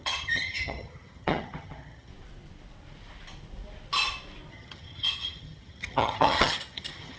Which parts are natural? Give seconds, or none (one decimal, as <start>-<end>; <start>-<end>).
2.1-4.5